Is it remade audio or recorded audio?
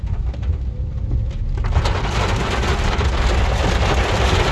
recorded